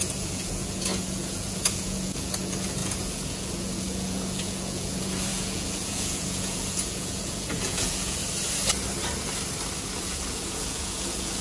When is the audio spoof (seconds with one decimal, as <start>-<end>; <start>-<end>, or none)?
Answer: 0.0-8.2; 10.0-11.4